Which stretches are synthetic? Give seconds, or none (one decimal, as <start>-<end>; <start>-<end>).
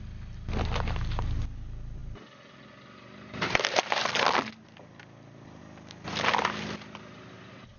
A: none